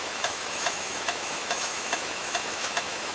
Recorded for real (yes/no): no